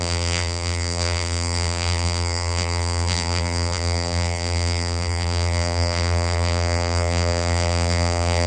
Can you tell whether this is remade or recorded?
remade